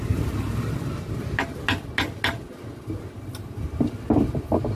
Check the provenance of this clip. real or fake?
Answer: real